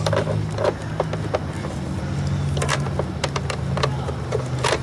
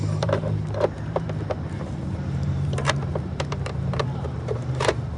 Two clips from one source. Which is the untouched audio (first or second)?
first